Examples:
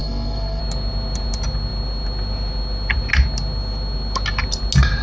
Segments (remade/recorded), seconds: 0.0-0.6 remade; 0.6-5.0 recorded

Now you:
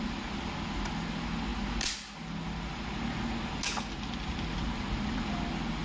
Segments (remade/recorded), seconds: 0.0-5.8 recorded

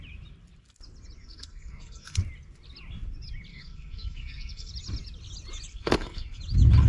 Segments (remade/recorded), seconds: 0.0-1.2 recorded; 1.2-2.2 remade; 2.2-3.5 recorded; 3.5-4.7 remade; 4.7-5.7 recorded; 5.7-6.4 remade; 6.4-6.9 recorded

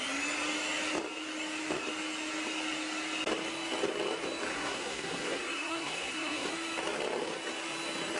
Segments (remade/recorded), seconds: 0.0-4.5 recorded; 4.5-6.5 remade; 6.5-8.2 recorded